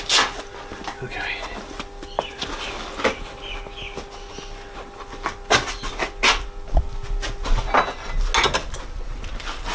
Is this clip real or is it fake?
real